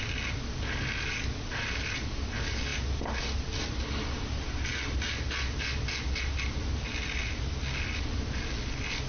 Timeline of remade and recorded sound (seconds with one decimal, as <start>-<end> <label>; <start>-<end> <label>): 0.0-9.1 recorded